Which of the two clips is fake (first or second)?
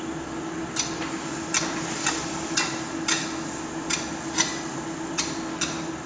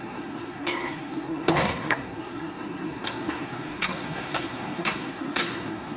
second